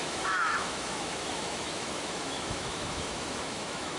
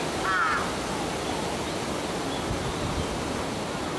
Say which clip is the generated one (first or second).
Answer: first